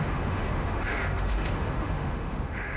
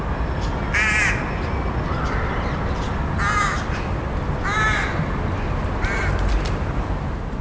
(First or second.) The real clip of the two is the second